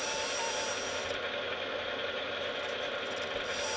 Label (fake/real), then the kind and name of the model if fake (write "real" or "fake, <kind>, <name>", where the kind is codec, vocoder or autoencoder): real